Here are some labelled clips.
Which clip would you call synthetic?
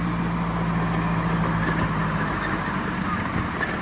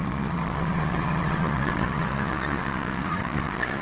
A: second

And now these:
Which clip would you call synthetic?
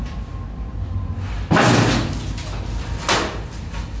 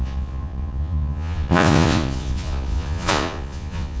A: second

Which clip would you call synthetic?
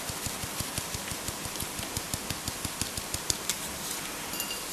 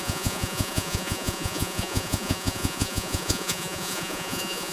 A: second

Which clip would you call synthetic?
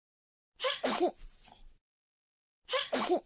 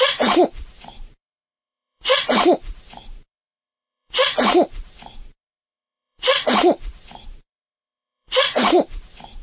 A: second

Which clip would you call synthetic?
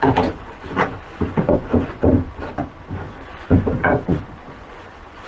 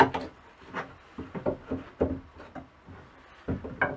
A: first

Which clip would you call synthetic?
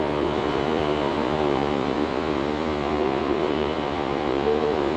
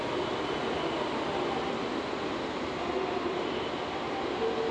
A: first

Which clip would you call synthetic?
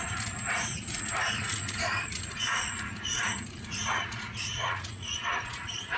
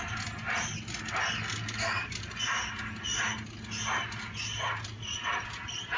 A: first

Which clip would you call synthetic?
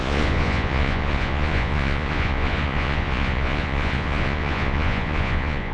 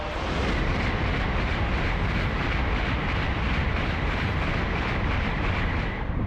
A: first